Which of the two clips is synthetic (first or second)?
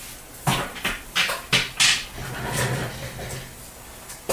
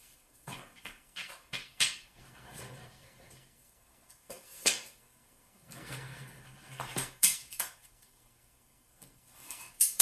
second